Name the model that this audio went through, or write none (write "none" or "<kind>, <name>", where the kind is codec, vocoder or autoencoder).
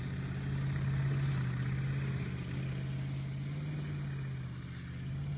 none